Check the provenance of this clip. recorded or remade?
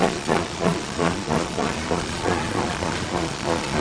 remade